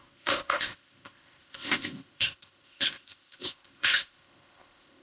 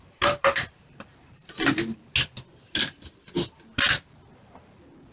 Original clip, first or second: second